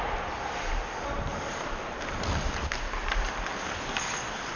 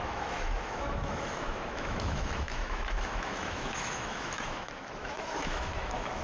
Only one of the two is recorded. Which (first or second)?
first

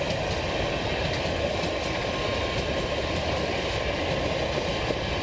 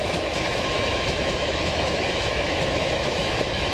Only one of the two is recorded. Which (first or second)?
first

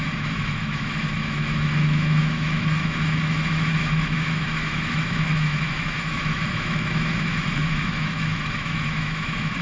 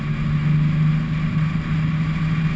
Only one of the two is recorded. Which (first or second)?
second